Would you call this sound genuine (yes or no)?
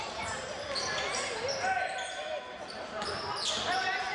yes